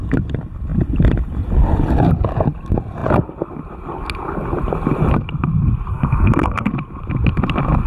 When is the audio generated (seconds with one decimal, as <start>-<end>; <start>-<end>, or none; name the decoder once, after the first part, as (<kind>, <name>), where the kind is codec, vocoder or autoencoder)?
5.9-6.7 (codec, SNAC)